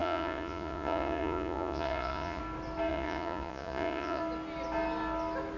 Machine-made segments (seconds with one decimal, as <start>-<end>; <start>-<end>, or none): 0.0-2.4; 2.9-4.2